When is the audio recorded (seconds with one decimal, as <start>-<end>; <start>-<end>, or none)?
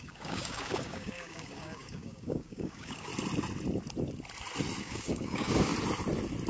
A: 3.1-4.8; 5.7-6.5